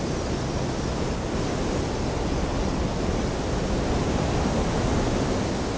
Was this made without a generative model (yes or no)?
yes